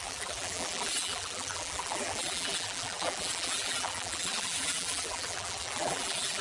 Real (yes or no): no